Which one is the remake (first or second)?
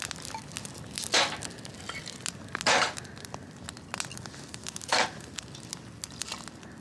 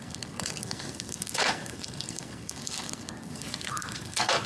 second